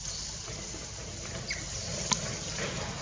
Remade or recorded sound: remade